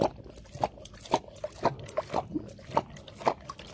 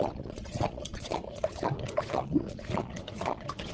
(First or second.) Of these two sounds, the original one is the first